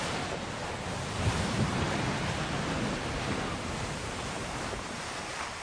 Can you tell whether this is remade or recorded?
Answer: remade